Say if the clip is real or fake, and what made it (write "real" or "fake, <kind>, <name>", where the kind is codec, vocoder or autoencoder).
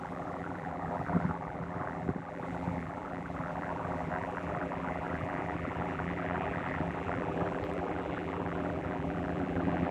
fake, vocoder, BigVGAN v2